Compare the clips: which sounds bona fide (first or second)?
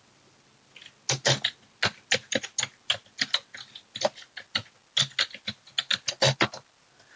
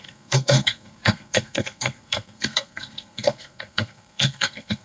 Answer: first